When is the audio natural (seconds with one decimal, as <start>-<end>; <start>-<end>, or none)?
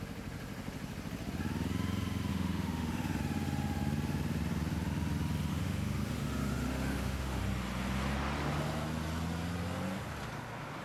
0.0-2.3; 3.2-5.5; 7.4-10.8